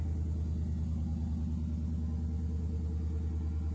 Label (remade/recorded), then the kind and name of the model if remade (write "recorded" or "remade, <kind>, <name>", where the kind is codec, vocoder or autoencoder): recorded